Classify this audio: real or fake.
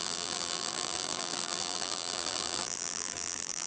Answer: fake